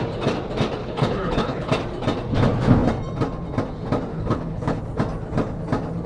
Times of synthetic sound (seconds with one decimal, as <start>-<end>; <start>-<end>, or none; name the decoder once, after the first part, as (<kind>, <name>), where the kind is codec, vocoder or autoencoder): 0.8-1.7 (codec, HILCodec); 4.1-4.8